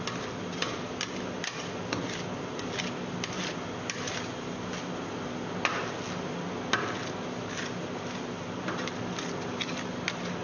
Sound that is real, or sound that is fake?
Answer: real